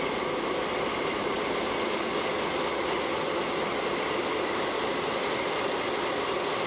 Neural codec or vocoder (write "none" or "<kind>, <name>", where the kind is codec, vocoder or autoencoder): none